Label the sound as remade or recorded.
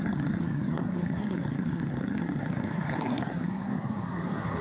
remade